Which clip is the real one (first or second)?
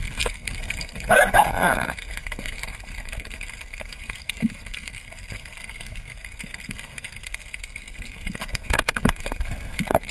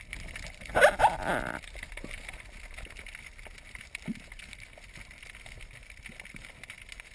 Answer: second